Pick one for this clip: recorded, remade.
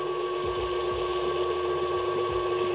recorded